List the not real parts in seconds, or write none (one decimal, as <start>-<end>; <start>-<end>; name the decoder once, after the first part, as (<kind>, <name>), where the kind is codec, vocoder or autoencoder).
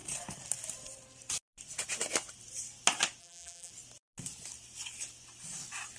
3.2-3.7 (vocoder, BigVGAN v2)